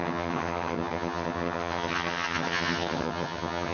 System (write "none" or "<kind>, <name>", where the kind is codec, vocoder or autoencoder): vocoder, HiFi-GAN